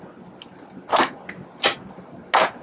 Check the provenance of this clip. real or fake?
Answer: real